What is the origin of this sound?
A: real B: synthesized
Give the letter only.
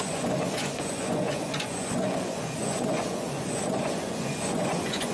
B